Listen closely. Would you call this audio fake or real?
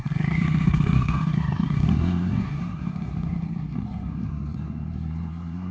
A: fake